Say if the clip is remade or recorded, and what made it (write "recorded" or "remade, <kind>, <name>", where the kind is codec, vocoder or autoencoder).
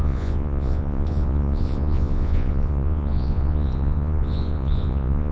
remade, vocoder, Vocos